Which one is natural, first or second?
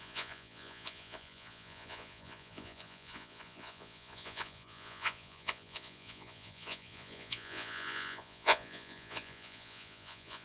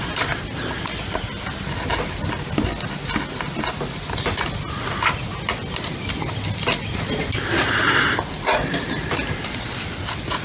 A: second